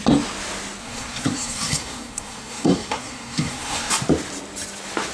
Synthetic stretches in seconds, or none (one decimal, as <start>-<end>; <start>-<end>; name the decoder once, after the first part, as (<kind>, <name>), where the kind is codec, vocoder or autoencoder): 0.8-3.9 (codec, SNAC)